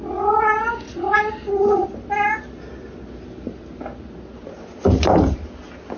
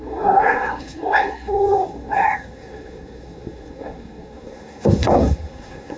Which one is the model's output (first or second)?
second